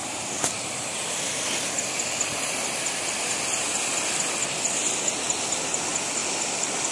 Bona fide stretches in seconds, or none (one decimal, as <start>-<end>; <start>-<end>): 1.5-2.3; 4.8-6.2